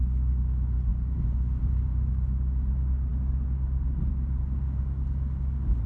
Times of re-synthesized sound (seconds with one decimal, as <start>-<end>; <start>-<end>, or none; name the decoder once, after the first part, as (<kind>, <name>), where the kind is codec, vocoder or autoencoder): 0.9-2.1 (vocoder, BigVGAN v2)